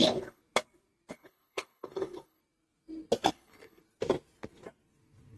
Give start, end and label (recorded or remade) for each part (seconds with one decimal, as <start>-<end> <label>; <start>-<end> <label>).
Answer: 0.0-0.4 remade; 0.4-1.1 recorded; 1.1-2.4 remade; 2.4-3.3 recorded; 3.3-3.8 remade; 3.8-5.4 recorded

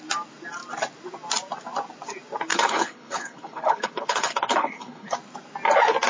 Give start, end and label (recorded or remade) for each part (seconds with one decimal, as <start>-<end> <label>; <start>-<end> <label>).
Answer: 0.0-2.5 recorded; 2.5-5.1 remade; 5.1-6.1 recorded

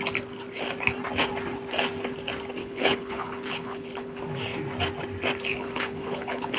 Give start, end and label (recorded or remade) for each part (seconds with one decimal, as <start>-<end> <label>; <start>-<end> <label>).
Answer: 0.0-2.6 recorded; 2.6-4.2 remade; 4.2-5.5 recorded; 5.5-6.6 remade

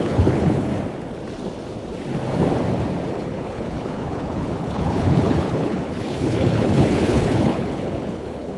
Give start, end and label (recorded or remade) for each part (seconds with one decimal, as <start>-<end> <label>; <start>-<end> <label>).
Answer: 0.0-0.7 remade; 0.7-3.1 recorded; 3.1-8.6 remade

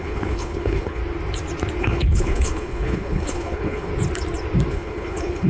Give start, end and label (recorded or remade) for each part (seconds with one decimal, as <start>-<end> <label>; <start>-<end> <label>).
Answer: 0.0-1.0 remade; 1.0-1.8 recorded; 1.8-3.9 remade; 3.9-4.7 recorded; 4.7-5.5 remade